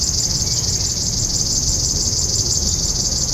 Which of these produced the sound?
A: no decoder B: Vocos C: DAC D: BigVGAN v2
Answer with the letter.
A